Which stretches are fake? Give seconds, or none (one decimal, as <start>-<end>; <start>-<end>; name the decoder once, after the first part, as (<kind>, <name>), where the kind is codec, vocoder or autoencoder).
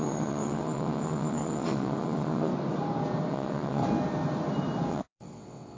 0.0-2.5 (vocoder, WaveNeXt); 3.3-3.8; 4.9-5.8